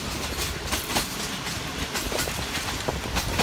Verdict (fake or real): fake